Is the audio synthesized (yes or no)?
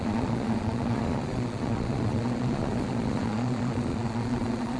yes